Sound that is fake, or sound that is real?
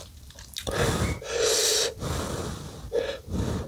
real